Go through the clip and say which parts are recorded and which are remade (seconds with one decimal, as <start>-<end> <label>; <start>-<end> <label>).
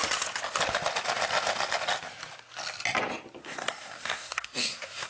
0.0-3.4 recorded; 3.4-5.1 remade